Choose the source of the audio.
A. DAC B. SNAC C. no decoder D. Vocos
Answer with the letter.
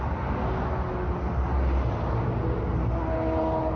C